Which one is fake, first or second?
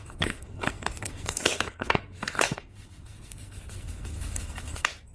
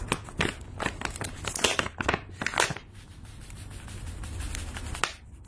first